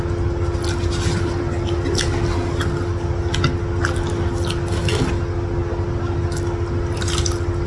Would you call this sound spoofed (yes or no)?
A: no